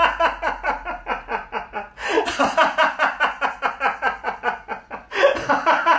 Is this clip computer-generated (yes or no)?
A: no